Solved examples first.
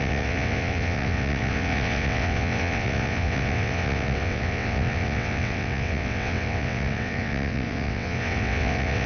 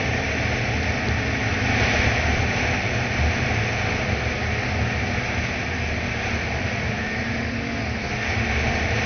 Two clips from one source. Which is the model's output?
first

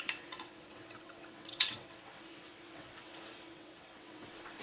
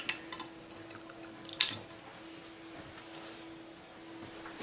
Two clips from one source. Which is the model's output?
first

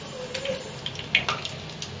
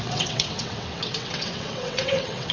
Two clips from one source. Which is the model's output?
second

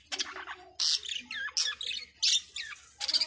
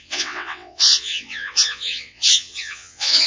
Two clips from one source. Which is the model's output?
second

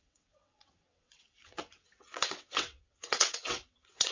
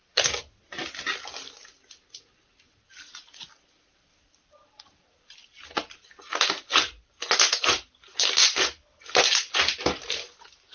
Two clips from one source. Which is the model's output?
first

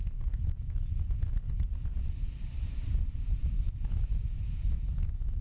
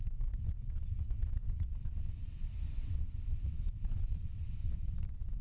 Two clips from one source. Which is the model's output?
second